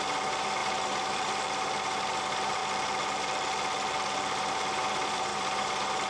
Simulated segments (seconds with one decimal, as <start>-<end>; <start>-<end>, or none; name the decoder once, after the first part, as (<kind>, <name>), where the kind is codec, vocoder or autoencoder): 0.0-2.6 (vocoder, BigVGAN v2); 4.3-6.1